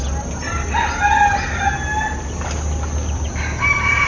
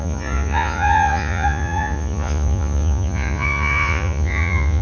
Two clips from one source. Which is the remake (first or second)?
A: second